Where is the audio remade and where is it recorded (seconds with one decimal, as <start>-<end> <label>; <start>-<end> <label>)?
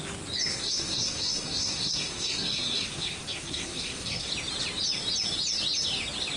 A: 0.0-0.5 recorded; 0.5-4.3 remade; 4.3-6.4 recorded